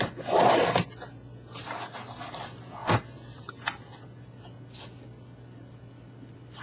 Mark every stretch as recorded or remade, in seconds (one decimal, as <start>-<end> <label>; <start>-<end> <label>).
0.0-6.6 recorded